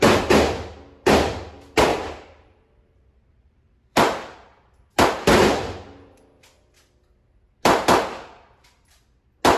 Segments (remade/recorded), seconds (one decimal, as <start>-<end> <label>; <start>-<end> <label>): 0.0-1.9 recorded; 1.9-4.2 remade; 4.2-9.6 recorded